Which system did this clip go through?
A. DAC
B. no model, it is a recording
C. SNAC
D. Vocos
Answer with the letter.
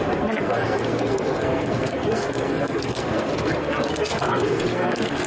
C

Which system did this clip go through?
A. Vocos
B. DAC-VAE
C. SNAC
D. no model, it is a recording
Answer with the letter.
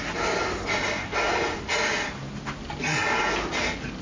D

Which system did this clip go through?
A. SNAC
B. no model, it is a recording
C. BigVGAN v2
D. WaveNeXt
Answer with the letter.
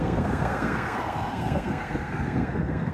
A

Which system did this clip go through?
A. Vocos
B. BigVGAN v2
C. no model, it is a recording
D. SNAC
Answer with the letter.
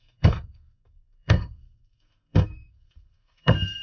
D